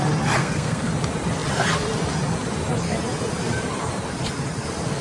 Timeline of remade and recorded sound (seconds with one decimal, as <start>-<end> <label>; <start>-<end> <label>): 0.0-0.4 recorded; 0.4-0.9 remade; 0.9-5.0 recorded